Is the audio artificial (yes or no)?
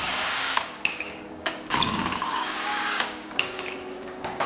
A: yes